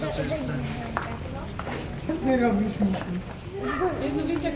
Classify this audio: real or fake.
real